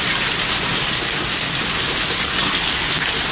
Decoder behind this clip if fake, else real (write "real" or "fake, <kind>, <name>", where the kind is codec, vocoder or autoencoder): real